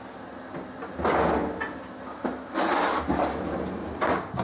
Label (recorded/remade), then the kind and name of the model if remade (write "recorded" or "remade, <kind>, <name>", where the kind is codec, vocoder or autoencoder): recorded